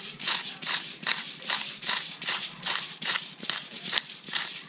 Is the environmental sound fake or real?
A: fake